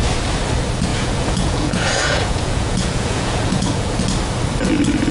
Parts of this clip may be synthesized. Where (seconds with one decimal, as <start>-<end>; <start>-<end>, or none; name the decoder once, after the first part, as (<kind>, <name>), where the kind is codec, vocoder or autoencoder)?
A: 0.9-4.0 (vocoder, Vocos)